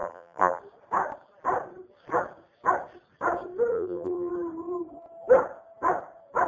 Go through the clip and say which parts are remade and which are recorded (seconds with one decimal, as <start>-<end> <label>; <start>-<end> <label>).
0.0-0.6 remade; 0.6-3.7 recorded; 3.7-4.3 remade; 4.3-6.5 recorded